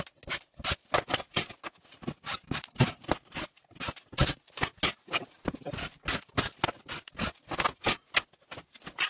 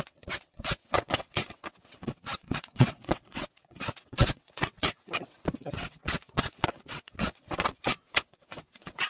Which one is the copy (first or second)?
second